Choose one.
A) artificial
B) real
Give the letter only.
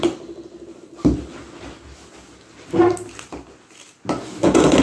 B